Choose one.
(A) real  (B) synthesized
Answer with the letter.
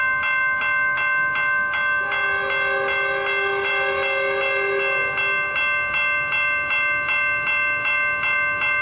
A